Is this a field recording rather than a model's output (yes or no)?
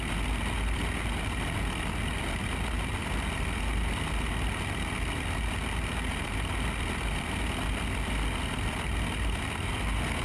yes